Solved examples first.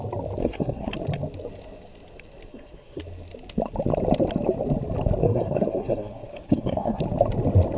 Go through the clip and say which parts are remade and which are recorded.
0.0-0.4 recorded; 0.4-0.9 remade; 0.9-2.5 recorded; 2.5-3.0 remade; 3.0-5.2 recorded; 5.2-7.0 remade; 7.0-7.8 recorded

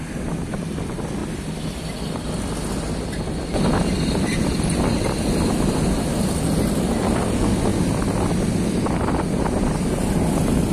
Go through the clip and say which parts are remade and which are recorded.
0.0-10.7 recorded

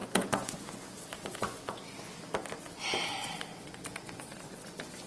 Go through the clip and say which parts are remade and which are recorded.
0.0-0.9 remade; 0.9-1.4 recorded; 1.4-2.1 remade; 2.1-3.5 recorded; 3.5-5.1 remade

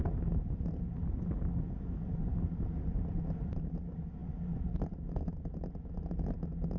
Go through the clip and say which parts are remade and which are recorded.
0.0-6.8 recorded

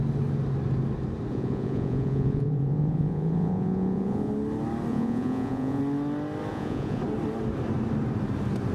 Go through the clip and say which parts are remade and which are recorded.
0.0-1.3 recorded; 1.3-4.3 remade; 4.3-4.9 recorded; 4.9-5.8 remade; 5.8-6.5 recorded; 6.5-7.0 remade; 7.0-8.7 recorded

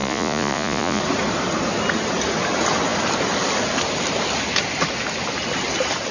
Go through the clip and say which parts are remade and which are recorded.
0.0-1.0 remade; 1.0-6.1 recorded

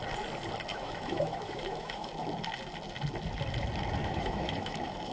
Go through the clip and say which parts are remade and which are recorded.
0.0-0.7 recorded; 0.7-2.1 remade; 2.1-4.0 recorded; 4.0-5.1 remade